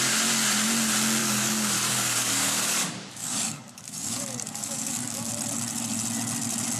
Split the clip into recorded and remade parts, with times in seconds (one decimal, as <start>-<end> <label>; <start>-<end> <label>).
0.0-1.2 recorded; 1.2-5.3 remade; 5.3-6.8 recorded